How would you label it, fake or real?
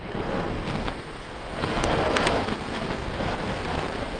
fake